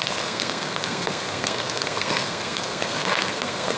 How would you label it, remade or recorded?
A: remade